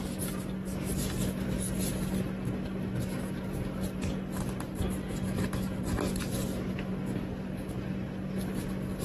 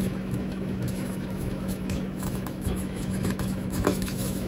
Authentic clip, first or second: first